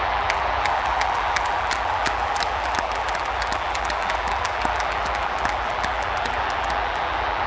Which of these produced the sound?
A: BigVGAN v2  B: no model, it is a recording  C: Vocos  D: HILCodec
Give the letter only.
A